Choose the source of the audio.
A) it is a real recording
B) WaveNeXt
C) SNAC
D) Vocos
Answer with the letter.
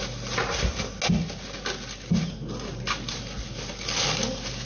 A